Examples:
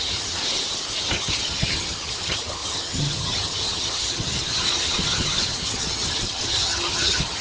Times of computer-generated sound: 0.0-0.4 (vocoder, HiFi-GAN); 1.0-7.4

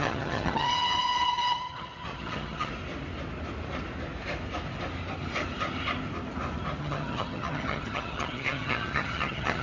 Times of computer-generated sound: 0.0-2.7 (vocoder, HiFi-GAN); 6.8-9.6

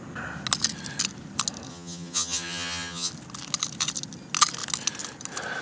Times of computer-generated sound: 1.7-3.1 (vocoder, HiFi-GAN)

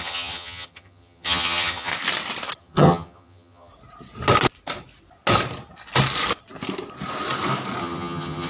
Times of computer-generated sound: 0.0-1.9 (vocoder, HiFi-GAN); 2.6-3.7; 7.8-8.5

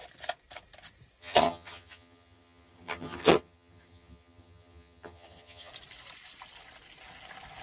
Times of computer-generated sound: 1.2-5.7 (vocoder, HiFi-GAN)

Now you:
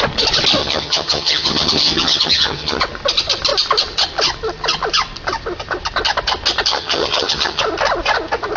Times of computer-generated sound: 0.6-2.8 (vocoder, HiFi-GAN); 6.7-7.6